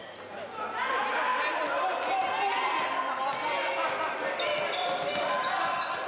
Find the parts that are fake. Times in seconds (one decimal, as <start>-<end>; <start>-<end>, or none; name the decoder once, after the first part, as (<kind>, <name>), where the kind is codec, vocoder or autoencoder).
none